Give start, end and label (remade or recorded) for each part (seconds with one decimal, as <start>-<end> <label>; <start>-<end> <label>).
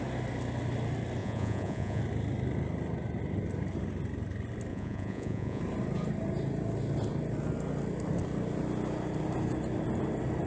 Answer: 0.0-1.2 recorded; 1.2-2.0 remade; 2.0-4.7 recorded; 4.7-5.6 remade; 5.6-10.5 recorded